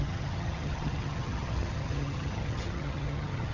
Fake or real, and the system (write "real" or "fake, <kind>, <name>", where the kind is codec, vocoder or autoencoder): fake, vocoder, HiFi-GAN